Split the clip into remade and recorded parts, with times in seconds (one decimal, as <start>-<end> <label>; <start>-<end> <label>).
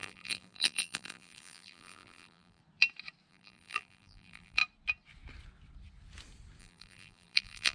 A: 0.0-2.6 remade; 2.6-3.3 recorded; 3.3-4.6 remade; 4.6-6.6 recorded; 6.6-7.7 remade